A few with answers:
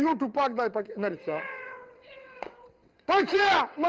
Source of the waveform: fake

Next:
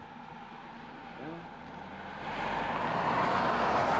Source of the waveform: real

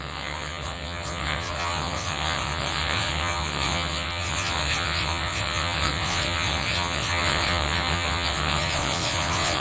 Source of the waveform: fake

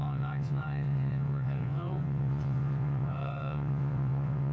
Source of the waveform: fake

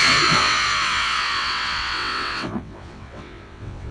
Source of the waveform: fake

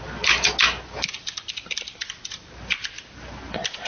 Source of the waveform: real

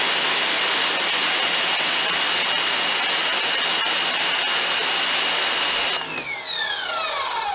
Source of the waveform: real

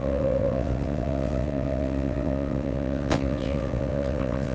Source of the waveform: fake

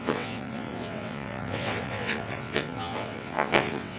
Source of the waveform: fake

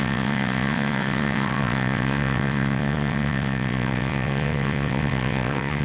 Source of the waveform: fake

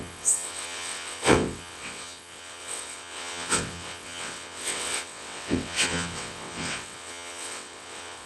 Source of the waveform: fake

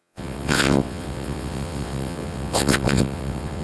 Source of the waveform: fake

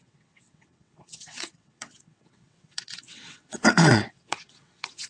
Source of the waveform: fake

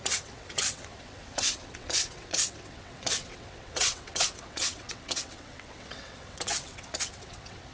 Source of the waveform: fake